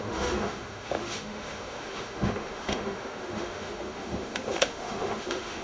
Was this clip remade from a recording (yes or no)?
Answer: yes